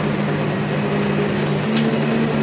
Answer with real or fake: real